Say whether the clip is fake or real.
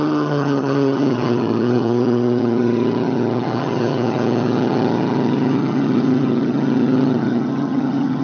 fake